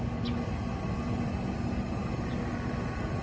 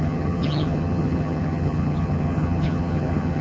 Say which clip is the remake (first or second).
second